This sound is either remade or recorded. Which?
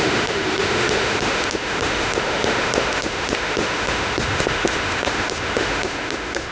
remade